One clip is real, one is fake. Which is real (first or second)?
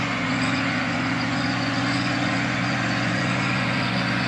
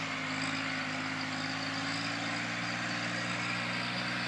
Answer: second